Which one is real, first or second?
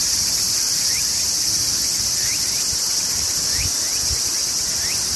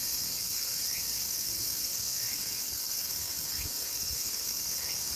first